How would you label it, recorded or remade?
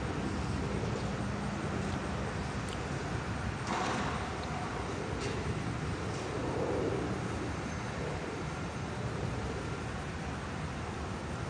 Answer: recorded